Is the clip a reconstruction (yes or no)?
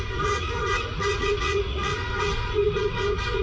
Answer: yes